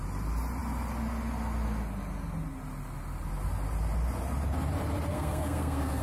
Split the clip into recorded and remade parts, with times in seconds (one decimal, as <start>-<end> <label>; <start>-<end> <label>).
0.0-5.1 recorded; 5.1-6.0 remade